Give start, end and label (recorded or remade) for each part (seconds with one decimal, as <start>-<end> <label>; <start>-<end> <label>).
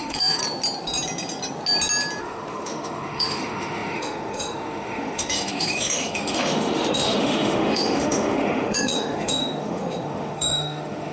0.0-0.4 remade; 0.4-2.2 recorded; 2.2-11.1 remade